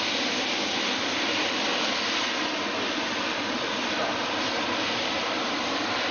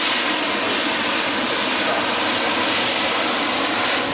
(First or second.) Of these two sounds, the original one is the second